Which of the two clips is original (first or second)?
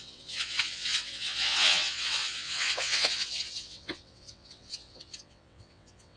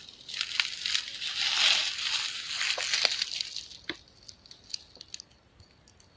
second